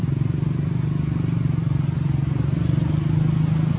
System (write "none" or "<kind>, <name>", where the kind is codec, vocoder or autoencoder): none